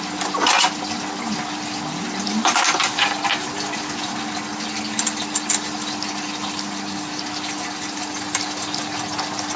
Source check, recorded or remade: recorded